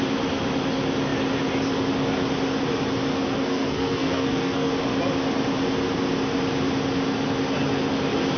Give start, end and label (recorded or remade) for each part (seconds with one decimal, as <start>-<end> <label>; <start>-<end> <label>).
0.0-3.1 recorded; 3.1-4.7 remade; 4.7-8.4 recorded